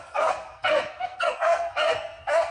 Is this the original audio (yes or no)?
no